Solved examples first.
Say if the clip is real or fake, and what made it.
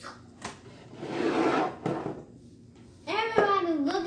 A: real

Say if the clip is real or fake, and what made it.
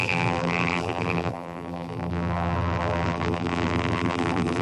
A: fake, vocoder, BigVGAN v2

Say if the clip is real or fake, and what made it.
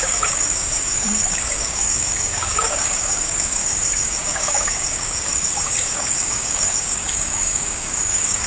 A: fake, codec, DAC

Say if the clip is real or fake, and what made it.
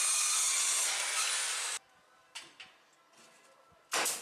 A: real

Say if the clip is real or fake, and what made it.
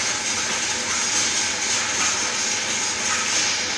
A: real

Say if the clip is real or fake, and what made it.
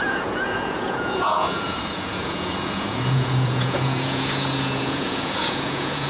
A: fake, vocoder, Vocos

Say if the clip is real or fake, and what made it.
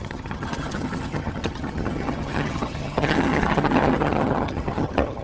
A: fake, vocoder, HiFi-GAN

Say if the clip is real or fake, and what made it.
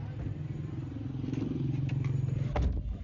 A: real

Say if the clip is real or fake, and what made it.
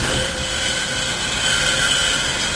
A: real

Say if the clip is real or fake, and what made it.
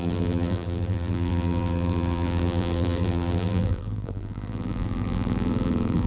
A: fake, vocoder, BigVGAN v2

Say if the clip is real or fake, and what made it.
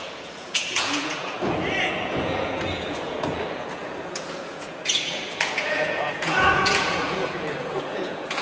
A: fake, vocoder, Vocos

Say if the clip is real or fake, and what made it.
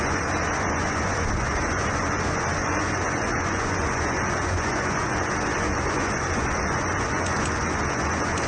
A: fake, vocoder, Vocos